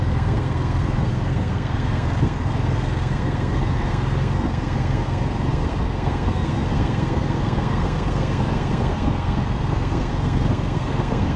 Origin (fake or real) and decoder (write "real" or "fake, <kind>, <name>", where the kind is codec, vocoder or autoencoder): fake, codec, SNAC